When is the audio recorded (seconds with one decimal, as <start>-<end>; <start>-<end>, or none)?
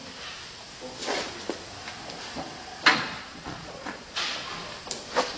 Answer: 0.0-2.9; 4.5-5.4